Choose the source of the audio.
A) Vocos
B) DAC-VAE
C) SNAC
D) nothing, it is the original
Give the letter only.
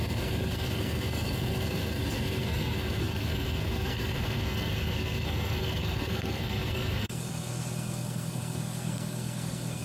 C